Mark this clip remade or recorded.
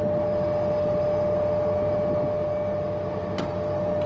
recorded